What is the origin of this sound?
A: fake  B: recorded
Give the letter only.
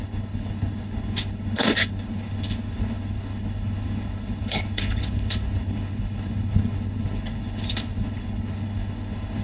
A